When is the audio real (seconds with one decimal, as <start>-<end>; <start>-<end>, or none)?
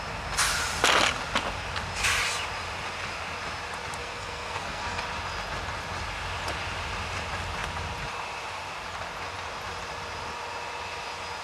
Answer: 0.0-4.0; 5.0-11.4